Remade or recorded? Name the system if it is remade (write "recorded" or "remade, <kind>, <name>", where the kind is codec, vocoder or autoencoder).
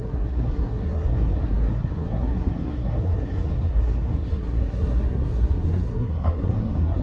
remade, codec, SNAC